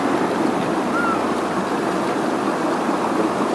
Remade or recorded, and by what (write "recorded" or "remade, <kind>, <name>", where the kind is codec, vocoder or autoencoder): recorded